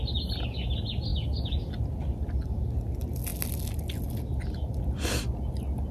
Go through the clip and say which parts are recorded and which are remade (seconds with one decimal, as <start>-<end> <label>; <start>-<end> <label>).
0.0-5.9 recorded